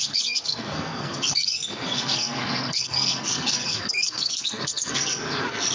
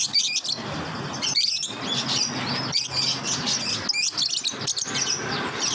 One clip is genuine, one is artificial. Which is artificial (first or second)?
first